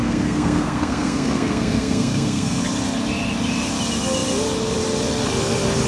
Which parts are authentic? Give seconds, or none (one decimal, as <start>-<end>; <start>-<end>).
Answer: 2.6-5.9